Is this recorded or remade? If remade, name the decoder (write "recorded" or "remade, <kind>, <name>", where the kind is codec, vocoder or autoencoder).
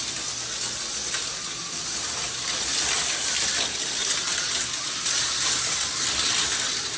recorded